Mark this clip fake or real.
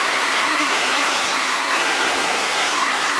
fake